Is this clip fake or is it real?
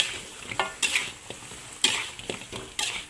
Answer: real